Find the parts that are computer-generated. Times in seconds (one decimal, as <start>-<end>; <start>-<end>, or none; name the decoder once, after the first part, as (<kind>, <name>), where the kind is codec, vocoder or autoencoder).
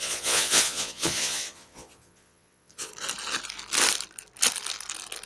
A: 0.0-2.9 (vocoder, Vocos)